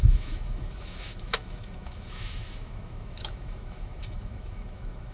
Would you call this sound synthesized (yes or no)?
yes